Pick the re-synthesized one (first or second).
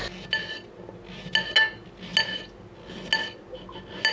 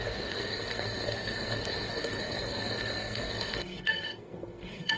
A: second